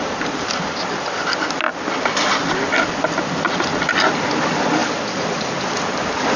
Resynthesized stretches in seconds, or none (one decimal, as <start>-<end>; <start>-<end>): none